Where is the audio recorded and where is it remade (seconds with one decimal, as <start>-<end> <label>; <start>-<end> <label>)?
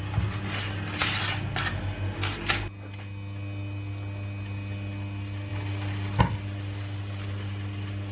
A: 0.0-8.1 recorded